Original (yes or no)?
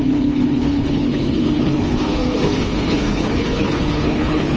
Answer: no